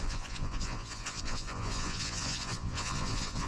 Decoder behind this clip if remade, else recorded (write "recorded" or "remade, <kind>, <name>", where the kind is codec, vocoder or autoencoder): remade, vocoder, Vocos